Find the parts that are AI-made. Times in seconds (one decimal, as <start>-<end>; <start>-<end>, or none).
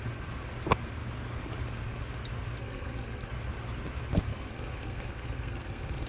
2.6-3.3; 4.3-6.1